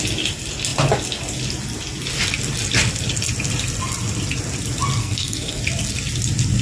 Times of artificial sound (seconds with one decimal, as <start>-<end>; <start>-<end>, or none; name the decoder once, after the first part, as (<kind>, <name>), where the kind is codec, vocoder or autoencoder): 5.0-5.6 (codec, SNAC)